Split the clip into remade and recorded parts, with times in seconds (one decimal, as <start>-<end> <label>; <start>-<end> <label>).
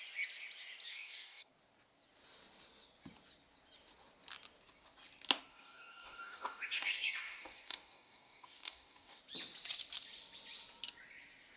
0.0-0.9 recorded; 0.9-1.5 remade; 1.5-5.5 recorded; 5.5-9.2 remade; 9.2-11.6 recorded